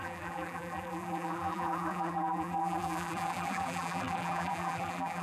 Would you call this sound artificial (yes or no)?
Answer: yes